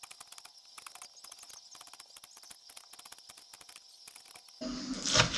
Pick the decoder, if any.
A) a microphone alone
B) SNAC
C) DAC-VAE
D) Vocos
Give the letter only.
A